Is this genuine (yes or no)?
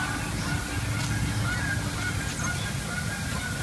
yes